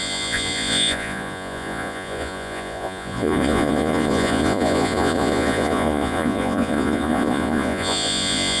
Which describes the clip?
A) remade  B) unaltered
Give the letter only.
A